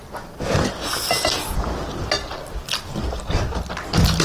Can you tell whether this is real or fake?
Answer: real